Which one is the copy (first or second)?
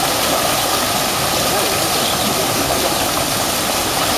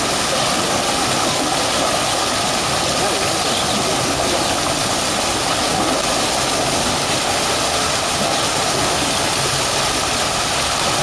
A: first